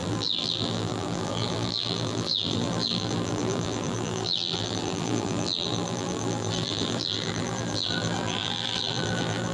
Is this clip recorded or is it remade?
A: remade